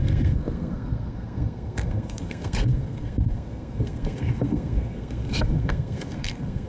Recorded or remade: remade